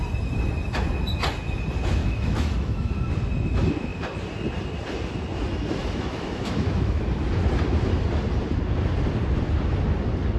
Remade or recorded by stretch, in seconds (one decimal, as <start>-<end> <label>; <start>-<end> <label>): 0.0-2.0 recorded; 2.0-2.9 remade; 2.9-5.8 recorded; 5.8-7.0 remade; 7.0-10.4 recorded